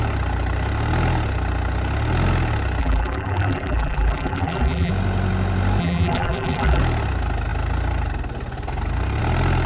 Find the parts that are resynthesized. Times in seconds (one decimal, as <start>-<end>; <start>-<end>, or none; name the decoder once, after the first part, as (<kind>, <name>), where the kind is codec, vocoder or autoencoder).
2.8-4.9 (vocoder, BigVGAN v2); 5.8-6.8